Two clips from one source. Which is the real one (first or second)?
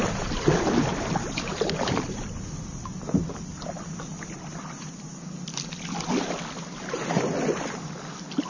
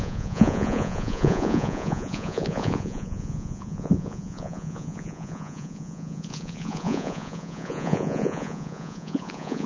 first